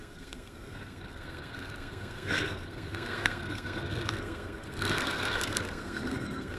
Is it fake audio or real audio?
fake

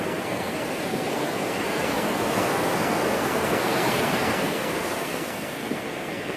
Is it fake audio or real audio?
fake